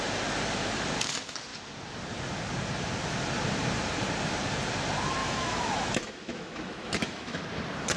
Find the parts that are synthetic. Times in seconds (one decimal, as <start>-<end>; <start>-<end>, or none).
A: 5.2-7.4